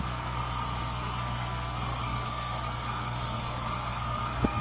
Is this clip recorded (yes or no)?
no